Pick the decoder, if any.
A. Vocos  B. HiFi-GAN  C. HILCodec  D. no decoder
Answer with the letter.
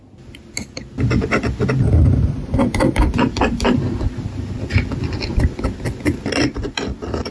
D